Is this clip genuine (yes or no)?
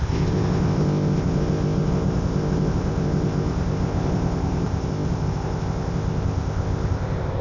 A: no